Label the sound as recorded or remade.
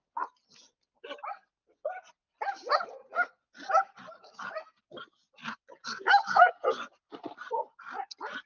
recorded